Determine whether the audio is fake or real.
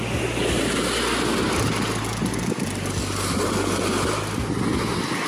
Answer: real